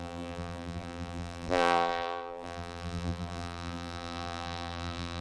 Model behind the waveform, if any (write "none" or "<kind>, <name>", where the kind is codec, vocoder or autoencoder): vocoder, BigVGAN v2